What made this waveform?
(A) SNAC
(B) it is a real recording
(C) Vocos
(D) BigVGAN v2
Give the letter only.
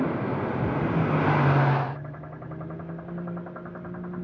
B